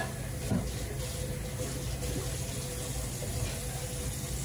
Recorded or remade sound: recorded